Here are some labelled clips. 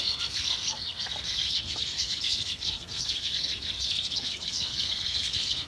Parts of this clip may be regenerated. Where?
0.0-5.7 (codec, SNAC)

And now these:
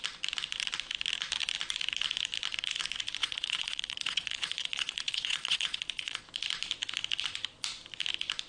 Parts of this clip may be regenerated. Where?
3.2-6.2 (vocoder, Vocos)

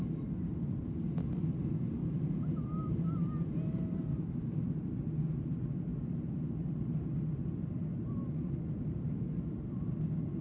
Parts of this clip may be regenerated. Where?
2.0-4.7 (vocoder, BigVGAN v2)

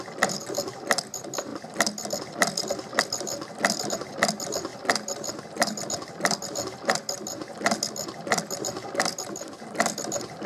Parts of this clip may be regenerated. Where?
none

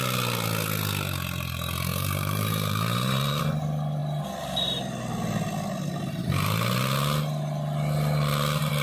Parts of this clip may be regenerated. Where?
1.9-3.4 (vocoder, BigVGAN v2)

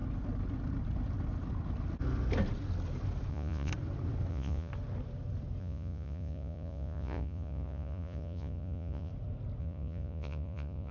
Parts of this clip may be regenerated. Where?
3.3-3.7 (vocoder, Vocos); 4.3-4.7; 5.6-9.1; 9.6-10.9